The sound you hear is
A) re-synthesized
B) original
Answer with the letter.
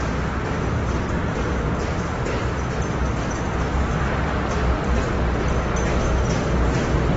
B